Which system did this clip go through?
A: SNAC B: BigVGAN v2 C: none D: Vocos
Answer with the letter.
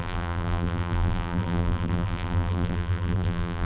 B